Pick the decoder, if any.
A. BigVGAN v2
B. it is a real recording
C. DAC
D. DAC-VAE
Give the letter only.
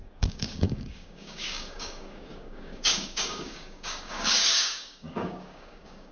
C